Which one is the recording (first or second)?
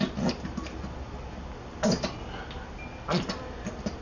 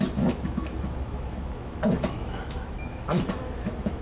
first